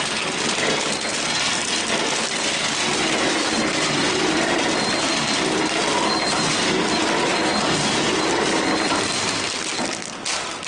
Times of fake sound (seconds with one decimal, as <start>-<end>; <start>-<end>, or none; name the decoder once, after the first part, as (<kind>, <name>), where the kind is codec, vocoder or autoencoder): none